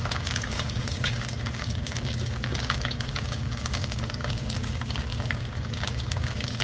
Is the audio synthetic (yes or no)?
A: yes